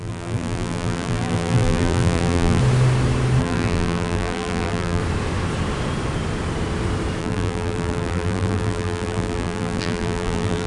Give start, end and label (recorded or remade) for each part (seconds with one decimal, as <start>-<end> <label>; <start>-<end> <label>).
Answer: 0.0-2.6 remade; 2.6-3.4 recorded; 3.4-5.0 remade; 5.0-7.2 recorded; 7.2-10.7 remade